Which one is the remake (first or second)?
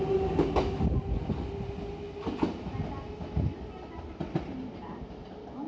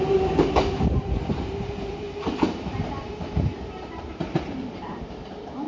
second